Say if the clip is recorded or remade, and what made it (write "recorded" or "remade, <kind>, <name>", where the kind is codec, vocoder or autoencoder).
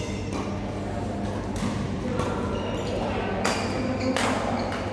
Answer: recorded